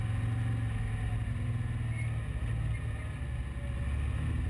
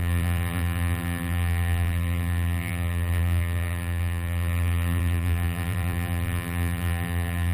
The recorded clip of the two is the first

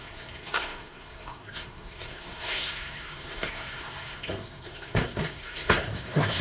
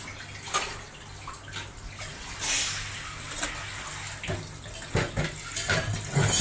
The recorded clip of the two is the second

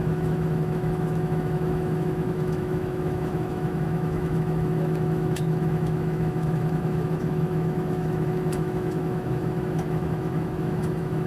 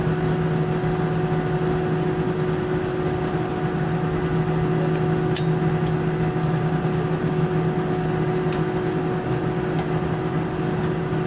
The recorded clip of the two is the second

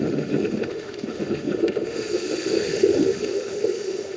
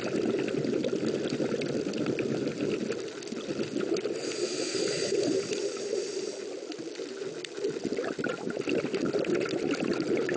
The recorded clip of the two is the second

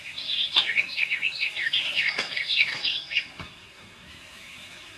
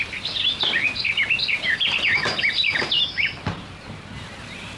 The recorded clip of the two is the second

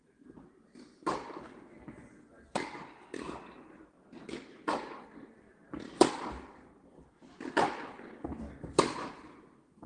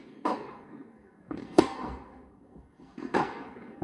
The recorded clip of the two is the first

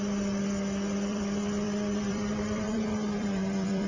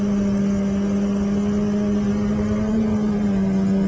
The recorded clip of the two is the second